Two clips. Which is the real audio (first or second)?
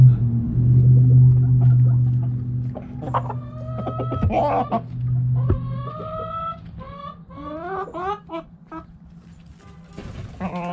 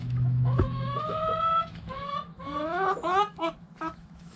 first